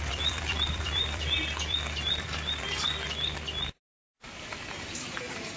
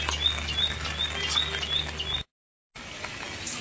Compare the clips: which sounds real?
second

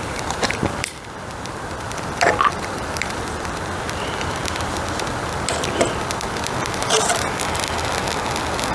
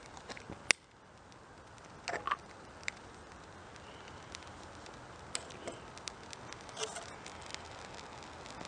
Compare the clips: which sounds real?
second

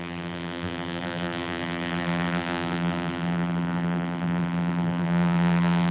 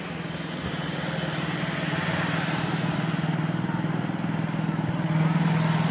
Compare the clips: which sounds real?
second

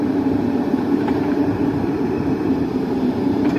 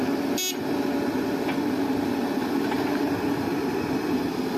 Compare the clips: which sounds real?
second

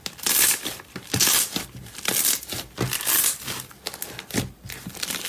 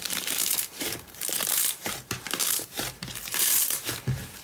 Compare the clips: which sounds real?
first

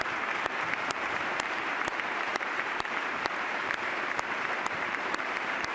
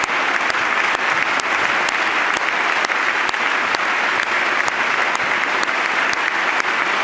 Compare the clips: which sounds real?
second